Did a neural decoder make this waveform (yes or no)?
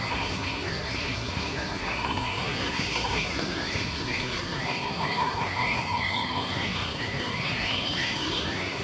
yes